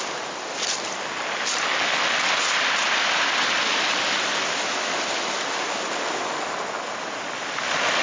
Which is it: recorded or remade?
recorded